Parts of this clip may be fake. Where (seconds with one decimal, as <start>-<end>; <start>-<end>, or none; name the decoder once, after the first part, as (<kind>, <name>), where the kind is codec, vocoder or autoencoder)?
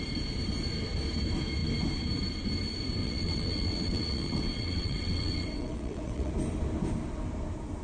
3.0-6.3 (vocoder, WaveNeXt)